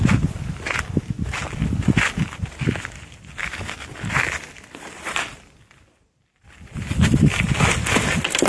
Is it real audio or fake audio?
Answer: real